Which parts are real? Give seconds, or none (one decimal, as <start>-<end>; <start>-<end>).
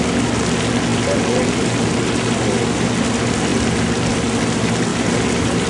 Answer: 0.0-5.7